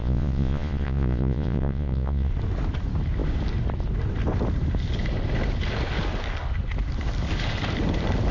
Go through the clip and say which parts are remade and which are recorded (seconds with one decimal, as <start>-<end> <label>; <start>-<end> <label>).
0.0-2.3 remade; 2.3-8.3 recorded